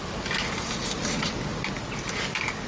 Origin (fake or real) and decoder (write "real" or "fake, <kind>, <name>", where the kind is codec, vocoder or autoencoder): real